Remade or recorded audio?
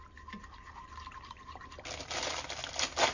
recorded